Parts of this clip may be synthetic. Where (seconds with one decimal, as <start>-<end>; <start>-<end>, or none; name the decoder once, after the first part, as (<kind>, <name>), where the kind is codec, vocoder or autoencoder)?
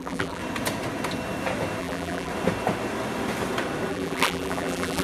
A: 0.0-0.4 (vocoder, BigVGAN v2); 1.8-2.3; 3.9-5.0